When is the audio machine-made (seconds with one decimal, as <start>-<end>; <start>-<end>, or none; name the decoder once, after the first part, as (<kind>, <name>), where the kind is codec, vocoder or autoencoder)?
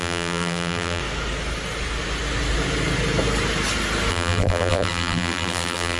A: 0.0-1.0 (vocoder, BigVGAN v2); 4.1-6.0